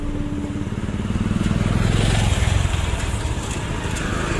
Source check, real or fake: real